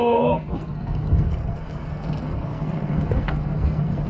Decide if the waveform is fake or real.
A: fake